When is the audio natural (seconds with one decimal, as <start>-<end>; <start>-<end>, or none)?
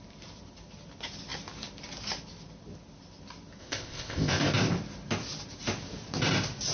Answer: 0.0-3.6; 4.4-6.7